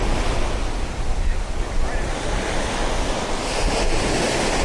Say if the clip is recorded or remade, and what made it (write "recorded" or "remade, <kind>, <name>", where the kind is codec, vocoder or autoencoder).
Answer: recorded